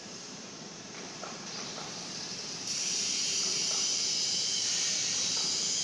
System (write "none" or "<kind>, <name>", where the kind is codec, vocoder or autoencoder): vocoder, BigVGAN v2